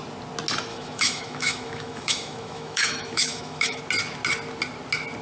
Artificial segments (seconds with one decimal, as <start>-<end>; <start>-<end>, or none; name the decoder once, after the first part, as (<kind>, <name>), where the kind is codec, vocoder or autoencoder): 0.7-3.8 (autoencoder, DAC-VAE)